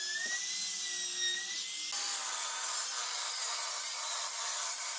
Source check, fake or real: real